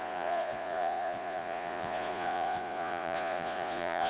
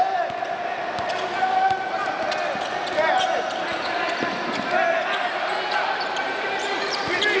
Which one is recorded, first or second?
second